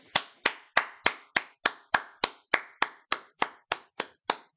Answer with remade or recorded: recorded